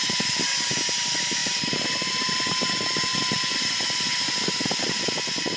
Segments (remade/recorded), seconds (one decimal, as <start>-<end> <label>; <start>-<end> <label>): 0.0-1.4 recorded; 1.4-2.1 remade; 2.1-3.1 recorded; 3.1-4.3 remade; 4.3-5.6 recorded